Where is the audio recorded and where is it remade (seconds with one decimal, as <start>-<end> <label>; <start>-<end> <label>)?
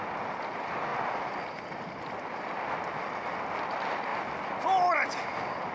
0.0-5.7 recorded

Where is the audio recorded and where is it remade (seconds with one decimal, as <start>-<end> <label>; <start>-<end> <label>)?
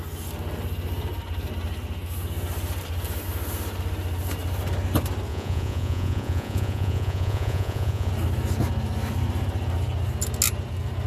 0.0-5.3 recorded; 5.3-8.1 remade; 8.1-11.1 recorded